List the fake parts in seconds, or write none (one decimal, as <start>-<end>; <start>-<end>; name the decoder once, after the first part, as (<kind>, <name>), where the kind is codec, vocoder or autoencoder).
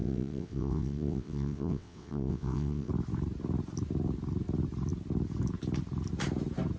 0.0-2.9 (vocoder, WaveNeXt)